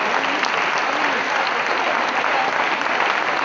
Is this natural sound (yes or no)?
yes